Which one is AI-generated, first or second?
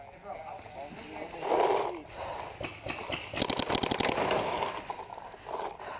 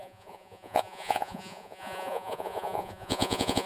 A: second